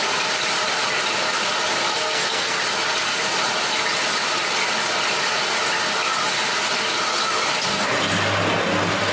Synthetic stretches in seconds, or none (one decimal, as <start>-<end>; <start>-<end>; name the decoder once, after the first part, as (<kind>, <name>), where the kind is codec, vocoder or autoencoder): 1.9-2.6 (codec, SNAC)